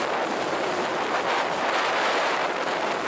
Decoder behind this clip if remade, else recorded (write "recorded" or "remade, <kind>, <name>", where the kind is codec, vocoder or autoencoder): recorded